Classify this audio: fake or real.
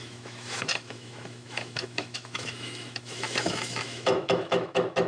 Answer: fake